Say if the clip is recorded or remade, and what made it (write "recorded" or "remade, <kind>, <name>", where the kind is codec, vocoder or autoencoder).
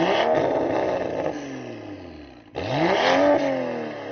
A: recorded